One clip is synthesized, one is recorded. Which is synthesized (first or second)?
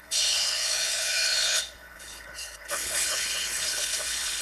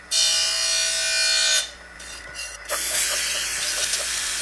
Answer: first